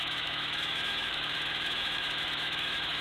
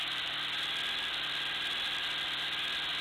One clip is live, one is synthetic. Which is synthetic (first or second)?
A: first